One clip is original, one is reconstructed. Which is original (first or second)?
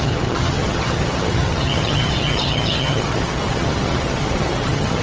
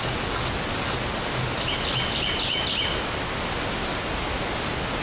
second